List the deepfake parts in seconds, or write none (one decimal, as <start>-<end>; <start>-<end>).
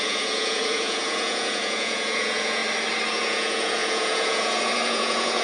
0.0-2.6; 3.1-5.4